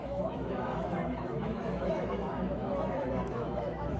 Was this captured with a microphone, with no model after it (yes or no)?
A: no